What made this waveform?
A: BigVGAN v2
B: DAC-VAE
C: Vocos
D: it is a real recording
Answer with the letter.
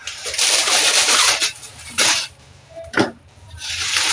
A